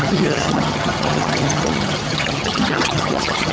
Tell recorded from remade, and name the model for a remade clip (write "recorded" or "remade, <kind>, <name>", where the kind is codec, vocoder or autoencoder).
remade, vocoder, HiFi-GAN